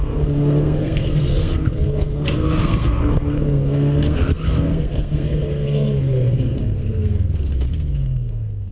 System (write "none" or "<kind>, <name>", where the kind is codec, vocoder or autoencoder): codec, SNAC